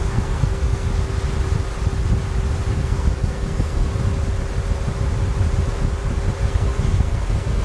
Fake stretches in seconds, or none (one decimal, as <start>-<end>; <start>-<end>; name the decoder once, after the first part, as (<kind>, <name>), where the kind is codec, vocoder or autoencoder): 0.0-0.9 (codec, SNAC); 2.7-3.9; 6.4-7.6